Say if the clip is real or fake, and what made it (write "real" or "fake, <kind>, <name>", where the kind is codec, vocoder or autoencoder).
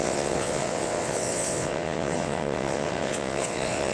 fake, vocoder, WaveNeXt